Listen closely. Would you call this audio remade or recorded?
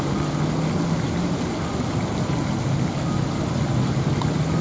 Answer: recorded